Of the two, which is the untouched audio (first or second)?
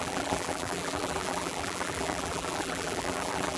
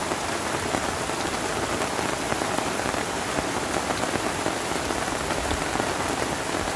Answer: second